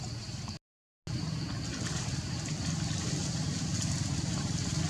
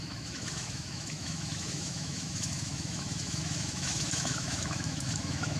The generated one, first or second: second